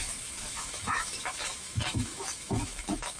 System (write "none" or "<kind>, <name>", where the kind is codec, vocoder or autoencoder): autoencoder, DAC-VAE